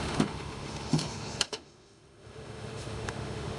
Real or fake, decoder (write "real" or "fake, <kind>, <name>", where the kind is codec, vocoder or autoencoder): fake, autoencoder, DAC-VAE